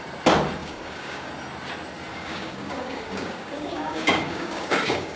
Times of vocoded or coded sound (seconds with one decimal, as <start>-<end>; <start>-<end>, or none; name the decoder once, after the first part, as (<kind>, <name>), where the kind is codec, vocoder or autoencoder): 0.6-1.3 (codec, DAC); 2.1-5.2